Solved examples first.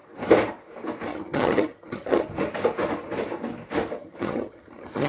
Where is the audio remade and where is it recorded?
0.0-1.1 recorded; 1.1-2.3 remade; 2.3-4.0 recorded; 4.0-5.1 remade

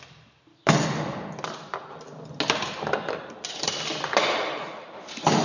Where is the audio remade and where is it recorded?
0.0-5.4 recorded

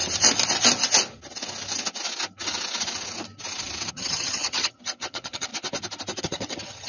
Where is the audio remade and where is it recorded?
0.0-3.9 recorded; 3.9-5.5 remade; 5.5-6.2 recorded; 6.2-6.9 remade

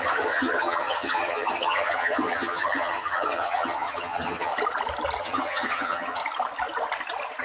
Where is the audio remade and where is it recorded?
0.0-4.5 remade; 4.5-5.2 recorded; 5.2-6.2 remade; 6.2-7.4 recorded

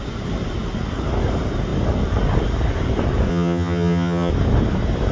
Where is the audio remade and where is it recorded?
0.0-3.3 recorded; 3.3-4.3 remade; 4.3-5.1 recorded

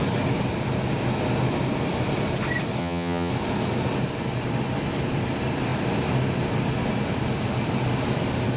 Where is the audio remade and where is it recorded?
0.0-2.8 recorded; 2.8-3.3 remade; 3.3-8.6 recorded

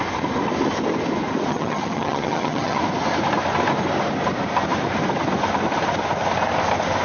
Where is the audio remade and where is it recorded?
0.0-1.5 recorded; 1.5-2.8 remade; 2.8-7.0 recorded

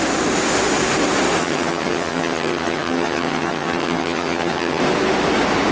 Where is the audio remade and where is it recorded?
0.0-1.4 recorded; 1.4-4.8 remade; 4.8-5.7 recorded